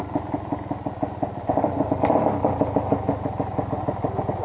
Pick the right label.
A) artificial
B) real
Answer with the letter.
B